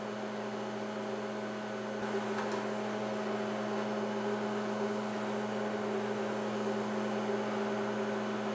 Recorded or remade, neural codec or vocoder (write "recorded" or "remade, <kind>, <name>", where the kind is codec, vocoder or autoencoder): recorded